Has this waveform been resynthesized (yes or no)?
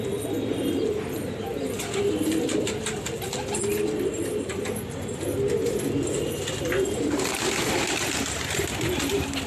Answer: no